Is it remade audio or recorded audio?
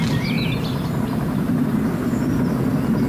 recorded